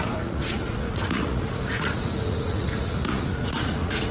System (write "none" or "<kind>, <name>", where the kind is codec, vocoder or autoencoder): vocoder, Vocos